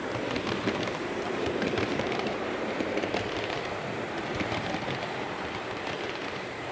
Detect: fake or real fake